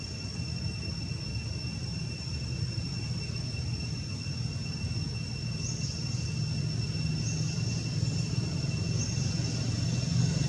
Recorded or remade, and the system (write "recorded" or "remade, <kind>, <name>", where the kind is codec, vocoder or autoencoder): recorded